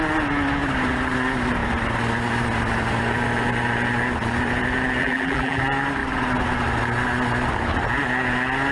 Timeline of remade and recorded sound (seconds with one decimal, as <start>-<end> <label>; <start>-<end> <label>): 0.0-5.0 recorded; 5.0-5.6 remade; 5.6-8.7 recorded